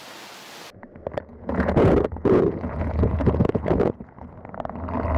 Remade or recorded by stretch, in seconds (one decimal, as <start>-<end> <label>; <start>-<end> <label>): 0.0-1.3 recorded; 1.3-4.4 remade; 4.4-5.2 recorded